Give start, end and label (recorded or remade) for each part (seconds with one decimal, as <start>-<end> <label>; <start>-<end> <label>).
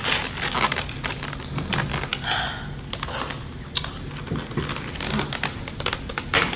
0.0-6.6 recorded